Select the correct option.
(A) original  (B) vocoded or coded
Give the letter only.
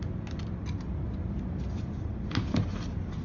A